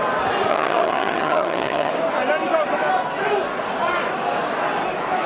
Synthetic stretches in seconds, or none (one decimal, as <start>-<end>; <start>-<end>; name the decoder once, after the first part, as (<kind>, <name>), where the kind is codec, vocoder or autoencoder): 0.5-1.9 (vocoder, HiFi-GAN)